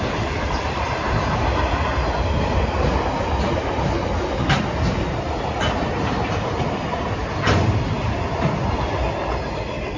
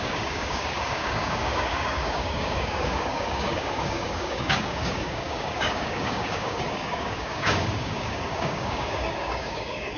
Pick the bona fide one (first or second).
first